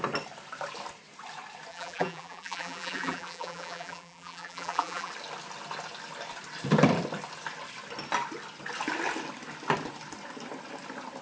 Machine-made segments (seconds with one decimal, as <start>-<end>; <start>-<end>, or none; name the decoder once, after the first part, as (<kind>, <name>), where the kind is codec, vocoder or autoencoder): 1.7-5.1 (vocoder, BigVGAN v2)